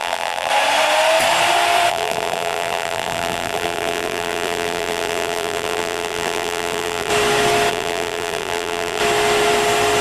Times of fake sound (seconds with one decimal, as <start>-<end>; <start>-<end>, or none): 0.0-0.5; 1.9-7.1; 7.7-9.0